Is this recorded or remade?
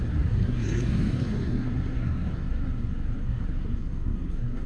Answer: remade